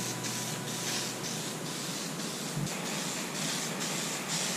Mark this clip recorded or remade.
recorded